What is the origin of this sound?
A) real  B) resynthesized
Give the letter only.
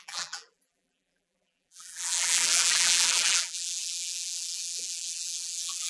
B